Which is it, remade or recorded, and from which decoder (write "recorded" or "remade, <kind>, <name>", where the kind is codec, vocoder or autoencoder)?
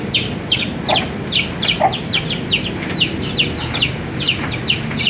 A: recorded